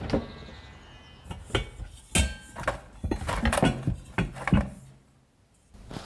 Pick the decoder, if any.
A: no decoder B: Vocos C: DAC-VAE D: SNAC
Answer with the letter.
A